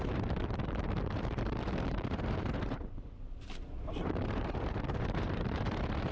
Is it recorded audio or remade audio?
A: remade